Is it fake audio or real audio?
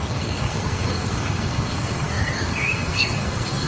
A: fake